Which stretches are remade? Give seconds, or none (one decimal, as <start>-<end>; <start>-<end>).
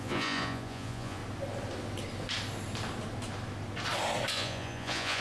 0.0-1.2; 4.3-5.2